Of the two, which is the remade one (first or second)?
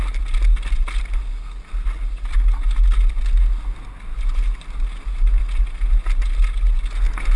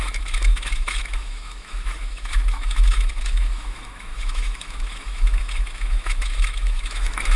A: second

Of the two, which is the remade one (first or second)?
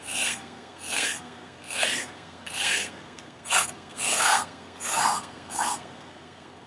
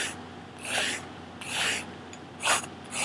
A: first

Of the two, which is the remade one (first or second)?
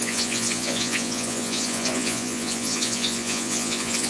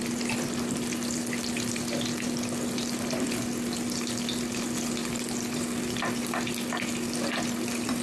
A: first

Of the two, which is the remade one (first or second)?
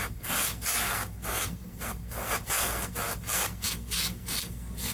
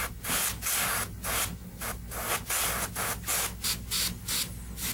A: first